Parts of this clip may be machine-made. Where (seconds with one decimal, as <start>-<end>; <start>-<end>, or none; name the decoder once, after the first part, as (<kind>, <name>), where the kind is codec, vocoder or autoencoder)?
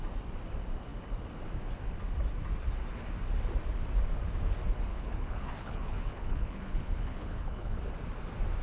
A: 4.9-7.8 (codec, HILCodec)